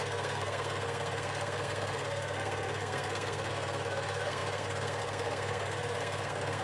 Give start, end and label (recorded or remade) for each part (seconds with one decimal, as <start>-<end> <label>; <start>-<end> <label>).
0.0-6.6 remade